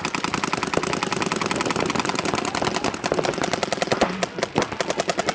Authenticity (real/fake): real